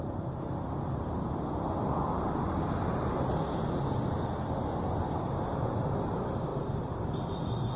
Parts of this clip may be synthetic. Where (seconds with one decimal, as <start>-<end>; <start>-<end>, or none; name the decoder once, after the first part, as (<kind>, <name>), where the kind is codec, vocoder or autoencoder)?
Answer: none